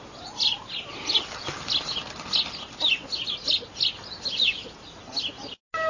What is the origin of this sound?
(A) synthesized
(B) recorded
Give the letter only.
B